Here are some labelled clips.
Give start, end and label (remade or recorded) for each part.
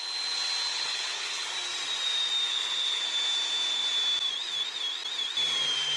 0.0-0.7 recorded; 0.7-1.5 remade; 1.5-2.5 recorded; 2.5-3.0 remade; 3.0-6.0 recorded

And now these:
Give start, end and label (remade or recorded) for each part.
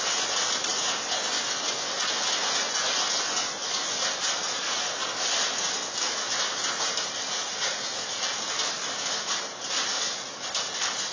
0.0-0.7 recorded; 0.7-4.2 remade; 4.2-11.1 recorded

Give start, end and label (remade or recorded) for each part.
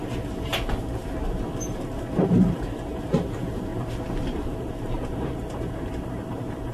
0.0-3.7 remade; 3.7-4.2 recorded; 4.2-6.7 remade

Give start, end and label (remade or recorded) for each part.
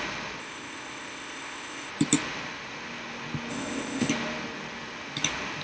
0.0-0.4 recorded; 0.4-1.9 remade; 1.9-3.5 recorded; 3.5-4.1 remade; 4.1-5.6 recorded